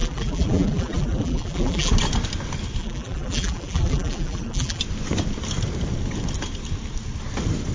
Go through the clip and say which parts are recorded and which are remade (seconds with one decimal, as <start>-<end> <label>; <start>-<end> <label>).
0.0-1.9 remade; 1.9-2.8 recorded; 2.8-4.8 remade; 4.8-7.7 recorded